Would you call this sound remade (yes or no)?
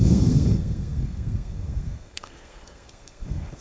yes